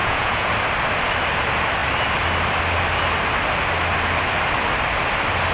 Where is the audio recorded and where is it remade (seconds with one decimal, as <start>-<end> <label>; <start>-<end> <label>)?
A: 0.0-0.5 remade; 0.5-5.5 recorded